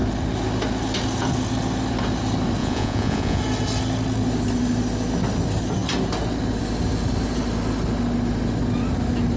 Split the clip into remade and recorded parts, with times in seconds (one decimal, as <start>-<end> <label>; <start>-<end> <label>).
0.0-2.6 recorded; 2.6-3.4 remade; 3.4-9.4 recorded